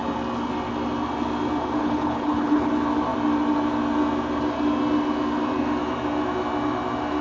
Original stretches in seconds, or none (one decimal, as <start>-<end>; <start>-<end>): 0.0-1.8; 2.7-7.2